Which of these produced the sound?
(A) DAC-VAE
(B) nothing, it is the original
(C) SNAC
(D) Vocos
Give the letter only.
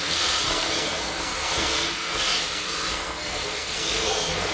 C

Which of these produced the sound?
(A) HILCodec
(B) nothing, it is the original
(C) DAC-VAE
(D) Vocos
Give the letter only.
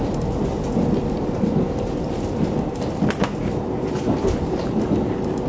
B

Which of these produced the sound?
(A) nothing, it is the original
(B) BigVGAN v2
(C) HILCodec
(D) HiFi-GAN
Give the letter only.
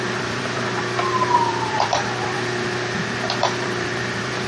B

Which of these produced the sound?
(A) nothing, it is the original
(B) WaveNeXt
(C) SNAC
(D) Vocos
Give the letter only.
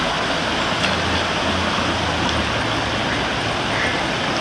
A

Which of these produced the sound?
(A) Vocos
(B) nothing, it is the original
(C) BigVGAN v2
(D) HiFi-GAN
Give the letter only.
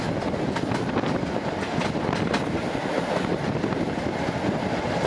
B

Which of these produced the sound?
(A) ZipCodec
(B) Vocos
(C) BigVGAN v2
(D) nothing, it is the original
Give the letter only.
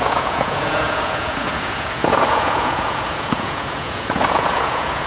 B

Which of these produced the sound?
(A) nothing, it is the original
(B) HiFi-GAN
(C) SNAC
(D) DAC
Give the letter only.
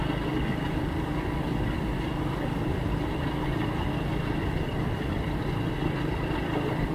A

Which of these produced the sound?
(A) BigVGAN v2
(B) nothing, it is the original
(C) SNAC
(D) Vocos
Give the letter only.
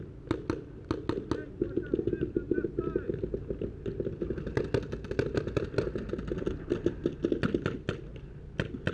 B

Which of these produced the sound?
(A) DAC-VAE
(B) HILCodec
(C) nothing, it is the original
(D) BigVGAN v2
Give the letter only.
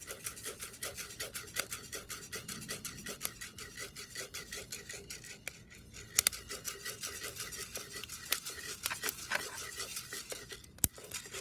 C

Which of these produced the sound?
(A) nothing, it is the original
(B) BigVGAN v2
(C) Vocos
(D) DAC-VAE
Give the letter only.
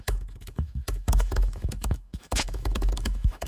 D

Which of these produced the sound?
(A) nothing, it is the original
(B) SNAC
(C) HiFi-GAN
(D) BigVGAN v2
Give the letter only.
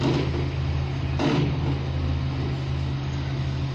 A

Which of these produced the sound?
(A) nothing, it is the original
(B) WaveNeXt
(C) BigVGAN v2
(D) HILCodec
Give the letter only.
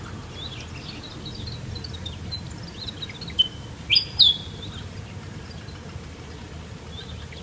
A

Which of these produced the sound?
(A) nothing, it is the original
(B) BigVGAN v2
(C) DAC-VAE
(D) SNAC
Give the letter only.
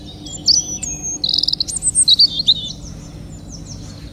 A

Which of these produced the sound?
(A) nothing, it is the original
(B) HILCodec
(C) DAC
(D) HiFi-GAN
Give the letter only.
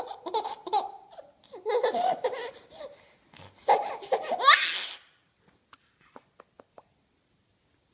A